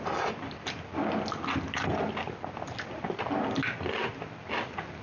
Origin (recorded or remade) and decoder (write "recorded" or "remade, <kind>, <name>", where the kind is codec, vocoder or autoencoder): recorded